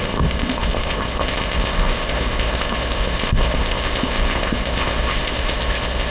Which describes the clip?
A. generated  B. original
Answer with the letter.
A